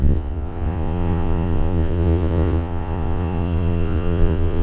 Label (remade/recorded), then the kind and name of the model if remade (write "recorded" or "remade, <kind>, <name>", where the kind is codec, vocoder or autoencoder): remade, vocoder, Vocos